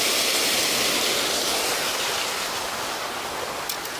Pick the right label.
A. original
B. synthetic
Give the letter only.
A